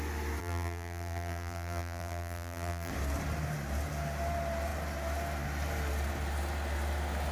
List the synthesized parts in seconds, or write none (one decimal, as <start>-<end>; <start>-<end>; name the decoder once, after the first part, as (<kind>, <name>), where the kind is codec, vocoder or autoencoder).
0.4-2.9 (vocoder, BigVGAN v2)